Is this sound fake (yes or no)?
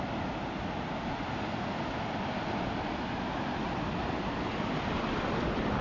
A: no